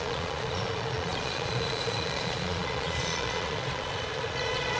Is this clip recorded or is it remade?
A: remade